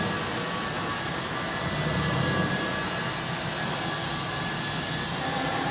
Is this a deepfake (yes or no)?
no